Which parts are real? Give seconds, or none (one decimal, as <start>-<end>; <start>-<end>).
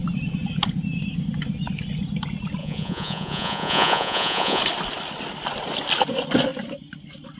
0.0-2.6; 4.6-7.4